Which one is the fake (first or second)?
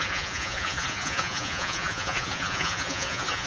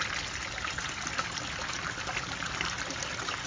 first